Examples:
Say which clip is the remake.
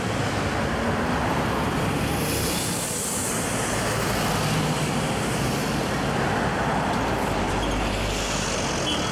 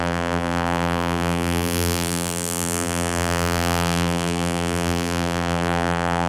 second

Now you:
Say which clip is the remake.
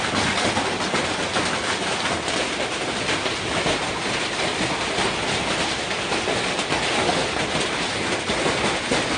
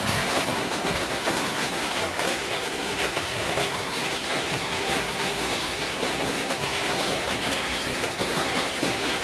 second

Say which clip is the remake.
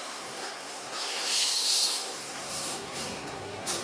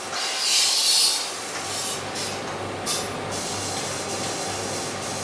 first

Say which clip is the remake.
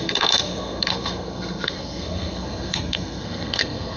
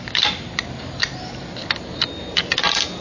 first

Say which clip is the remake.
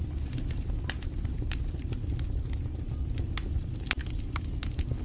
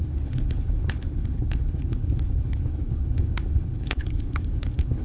second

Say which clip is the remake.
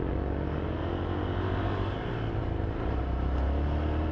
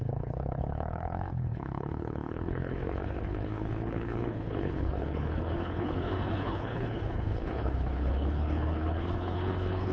second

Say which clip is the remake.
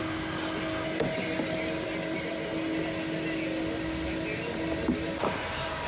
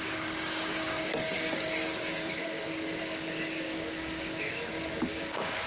second